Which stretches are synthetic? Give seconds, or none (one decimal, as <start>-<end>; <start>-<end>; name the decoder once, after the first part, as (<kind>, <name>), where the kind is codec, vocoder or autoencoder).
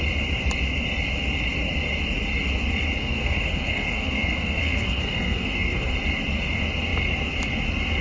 3.0-5.9 (codec, SNAC)